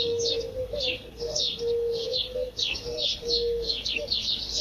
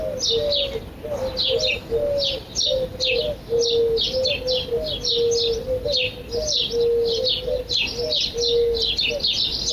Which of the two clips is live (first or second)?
second